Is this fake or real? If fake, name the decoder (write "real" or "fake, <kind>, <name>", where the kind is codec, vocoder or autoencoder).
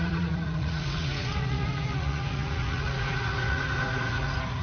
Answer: fake, vocoder, Vocos